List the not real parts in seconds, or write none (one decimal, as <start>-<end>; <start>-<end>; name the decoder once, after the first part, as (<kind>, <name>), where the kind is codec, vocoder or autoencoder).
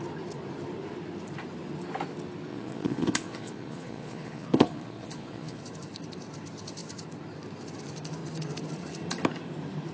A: 2.5-5.6 (vocoder, Vocos)